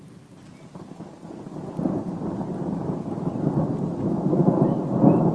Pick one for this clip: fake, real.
real